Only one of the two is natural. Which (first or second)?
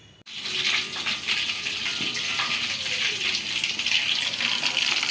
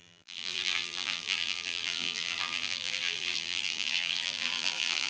first